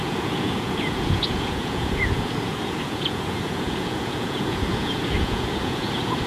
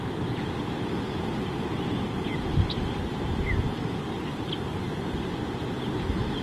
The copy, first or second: first